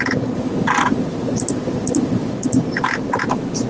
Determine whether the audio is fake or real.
real